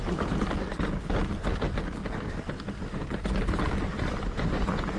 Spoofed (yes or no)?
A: no